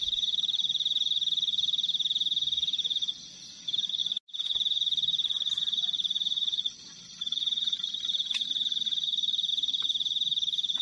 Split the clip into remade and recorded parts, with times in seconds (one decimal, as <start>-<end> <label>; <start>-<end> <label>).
0.0-9.5 recorded; 9.5-10.8 remade